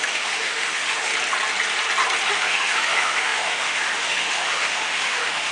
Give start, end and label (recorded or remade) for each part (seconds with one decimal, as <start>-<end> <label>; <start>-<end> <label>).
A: 0.0-1.1 remade; 1.1-2.3 recorded; 2.3-5.5 remade